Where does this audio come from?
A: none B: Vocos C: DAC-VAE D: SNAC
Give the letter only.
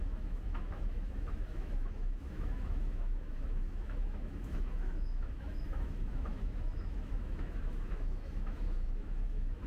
C